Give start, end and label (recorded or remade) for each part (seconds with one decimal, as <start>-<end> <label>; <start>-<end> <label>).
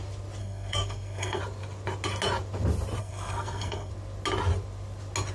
0.0-0.4 recorded; 0.4-1.4 remade; 1.4-3.0 recorded; 3.0-3.9 remade; 3.9-5.3 recorded